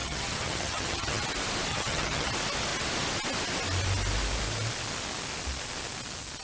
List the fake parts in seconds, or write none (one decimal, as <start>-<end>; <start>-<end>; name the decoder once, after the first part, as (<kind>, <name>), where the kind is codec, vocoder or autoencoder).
0.0-1.2 (vocoder, HiFi-GAN); 1.7-2.3